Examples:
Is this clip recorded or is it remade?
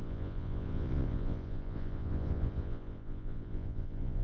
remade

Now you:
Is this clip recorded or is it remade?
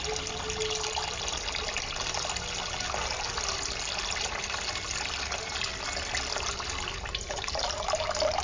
recorded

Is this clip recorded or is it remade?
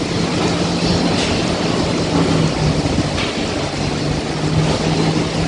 recorded